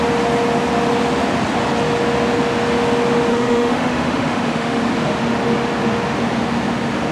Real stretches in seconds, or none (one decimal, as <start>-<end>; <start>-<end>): 0.0-3.3; 4.8-7.1